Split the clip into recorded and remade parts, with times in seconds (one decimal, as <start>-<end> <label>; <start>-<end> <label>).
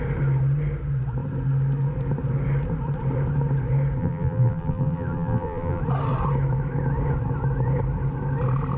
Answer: 0.0-4.0 recorded; 4.0-5.8 remade; 5.8-8.8 recorded